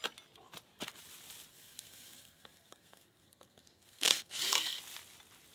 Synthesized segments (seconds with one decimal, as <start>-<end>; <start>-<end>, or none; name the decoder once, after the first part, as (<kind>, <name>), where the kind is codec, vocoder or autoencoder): 1.5-4.8 (codec, SNAC)